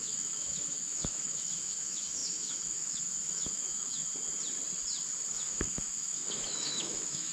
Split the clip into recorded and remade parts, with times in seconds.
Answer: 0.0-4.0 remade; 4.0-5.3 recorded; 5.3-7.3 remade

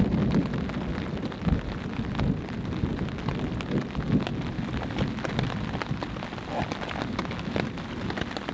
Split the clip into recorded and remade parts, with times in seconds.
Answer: 0.0-8.5 recorded

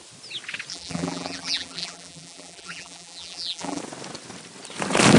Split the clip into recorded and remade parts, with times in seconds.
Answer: 0.0-0.7 recorded; 0.7-3.8 remade; 3.8-5.2 recorded

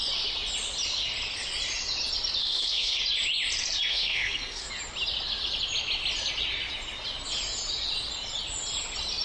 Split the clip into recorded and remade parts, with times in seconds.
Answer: 0.0-2.4 recorded; 2.4-3.0 remade; 3.0-3.9 recorded; 3.9-4.7 remade; 4.7-9.2 recorded

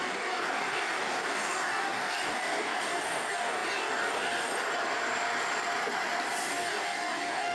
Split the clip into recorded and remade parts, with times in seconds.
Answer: 0.0-4.5 remade; 4.5-6.5 recorded; 6.5-7.5 remade

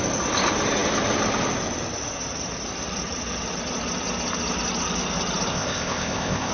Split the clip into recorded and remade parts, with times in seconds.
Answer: 0.0-5.5 recorded; 5.5-6.5 remade